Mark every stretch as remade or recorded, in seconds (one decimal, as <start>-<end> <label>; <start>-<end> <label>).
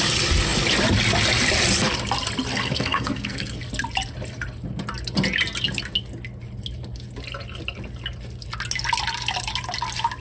0.0-2.5 recorded; 2.5-3.6 remade; 3.6-10.2 recorded